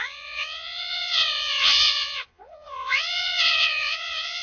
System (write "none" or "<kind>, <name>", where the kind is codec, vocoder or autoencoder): vocoder, Vocos